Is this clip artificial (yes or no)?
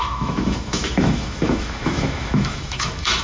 yes